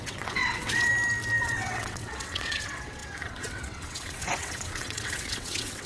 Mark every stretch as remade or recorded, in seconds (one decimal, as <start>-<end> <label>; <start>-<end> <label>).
0.0-0.9 remade; 0.9-1.4 recorded; 1.4-5.9 remade